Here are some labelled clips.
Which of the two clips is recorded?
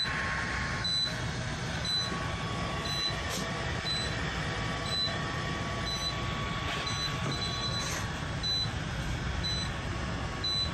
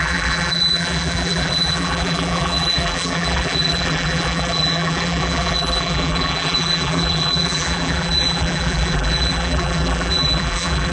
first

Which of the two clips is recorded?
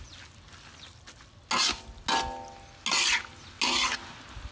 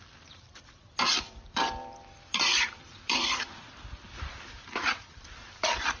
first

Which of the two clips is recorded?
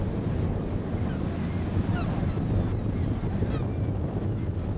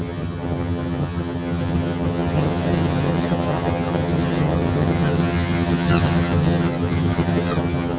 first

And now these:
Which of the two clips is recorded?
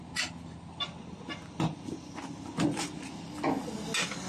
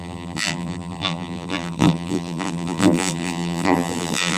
first